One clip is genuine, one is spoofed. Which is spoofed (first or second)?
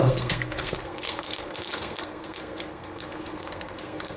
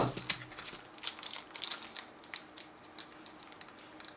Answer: first